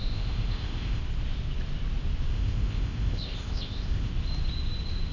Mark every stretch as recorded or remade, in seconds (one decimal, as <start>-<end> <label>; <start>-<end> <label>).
0.0-1.0 remade; 1.0-2.3 recorded; 2.3-4.1 remade; 4.1-5.1 recorded

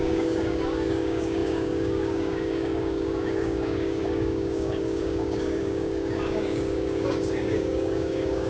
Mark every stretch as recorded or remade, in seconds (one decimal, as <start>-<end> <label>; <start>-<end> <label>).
0.0-8.5 remade

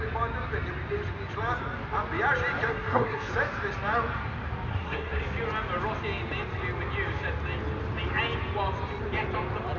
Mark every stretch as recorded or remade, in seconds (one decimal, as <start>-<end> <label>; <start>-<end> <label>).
0.0-2.7 recorded; 2.7-3.3 remade; 3.3-4.7 recorded; 4.7-5.2 remade; 5.2-9.8 recorded